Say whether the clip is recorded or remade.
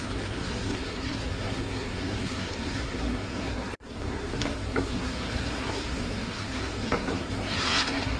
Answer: remade